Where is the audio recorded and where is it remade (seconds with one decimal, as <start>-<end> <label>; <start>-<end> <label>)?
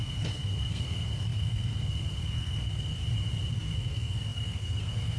0.0-3.0 remade; 3.0-3.5 recorded; 3.5-5.2 remade